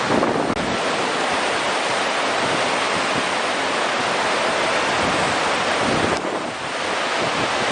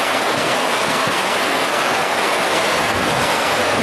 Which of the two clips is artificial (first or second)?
second